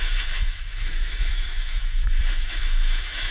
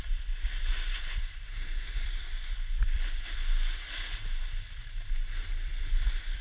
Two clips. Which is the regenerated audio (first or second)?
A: first